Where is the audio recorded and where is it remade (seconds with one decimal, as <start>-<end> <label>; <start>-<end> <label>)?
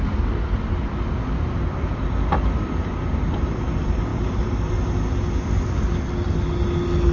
0.0-7.1 recorded